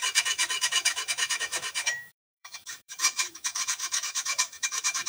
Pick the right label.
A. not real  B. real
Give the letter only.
A